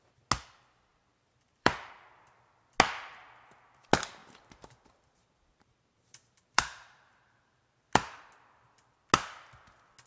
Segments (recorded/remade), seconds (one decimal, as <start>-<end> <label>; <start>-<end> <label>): 0.0-1.1 recorded; 1.1-1.9 remade; 1.9-4.2 recorded; 4.2-8.2 remade; 8.2-10.1 recorded